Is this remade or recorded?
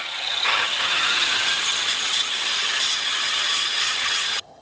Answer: remade